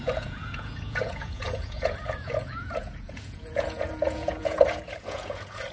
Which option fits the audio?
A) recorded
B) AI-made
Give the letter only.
B